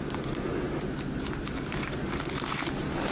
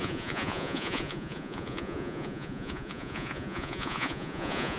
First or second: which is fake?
second